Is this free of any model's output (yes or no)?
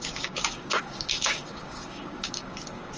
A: no